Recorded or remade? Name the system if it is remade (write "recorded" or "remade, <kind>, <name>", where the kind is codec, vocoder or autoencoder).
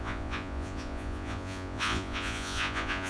remade, vocoder, Vocos